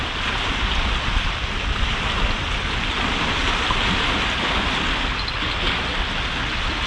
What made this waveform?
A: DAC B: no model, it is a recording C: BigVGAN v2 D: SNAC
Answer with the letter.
B